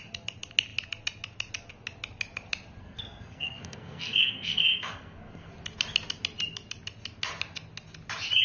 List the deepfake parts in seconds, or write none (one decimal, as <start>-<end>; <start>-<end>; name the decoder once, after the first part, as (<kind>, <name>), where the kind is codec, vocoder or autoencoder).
2.8-5.5 (codec, SNAC)